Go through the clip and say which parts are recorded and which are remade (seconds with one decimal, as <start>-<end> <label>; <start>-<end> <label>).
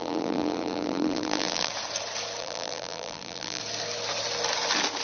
0.0-1.7 remade; 1.7-2.4 recorded; 2.4-3.6 remade; 3.6-5.0 recorded